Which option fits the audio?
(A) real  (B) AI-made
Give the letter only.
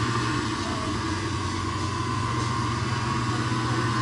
B